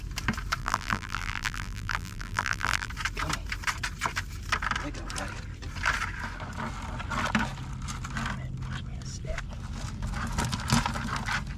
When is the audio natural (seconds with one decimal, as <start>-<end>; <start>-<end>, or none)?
0.0-0.6; 2.9-11.6